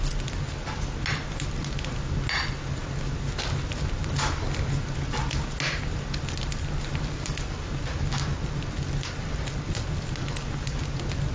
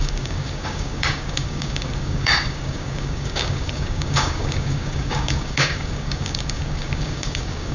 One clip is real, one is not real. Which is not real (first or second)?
second